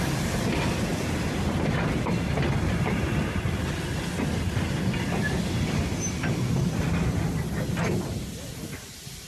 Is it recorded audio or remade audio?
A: recorded